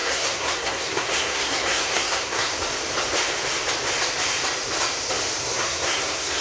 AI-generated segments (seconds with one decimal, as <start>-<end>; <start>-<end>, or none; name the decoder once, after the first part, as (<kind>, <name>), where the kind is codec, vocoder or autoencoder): 0.0-2.5 (codec, SNAC); 5.4-6.4